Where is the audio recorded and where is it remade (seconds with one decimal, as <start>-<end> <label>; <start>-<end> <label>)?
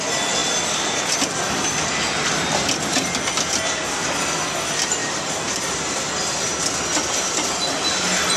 0.0-5.0 recorded; 5.0-6.1 remade; 6.1-8.4 recorded